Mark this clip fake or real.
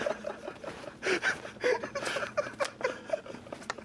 real